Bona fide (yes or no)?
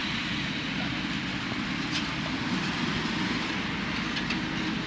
yes